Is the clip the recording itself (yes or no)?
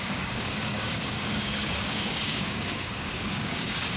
no